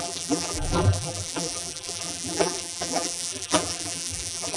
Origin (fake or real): fake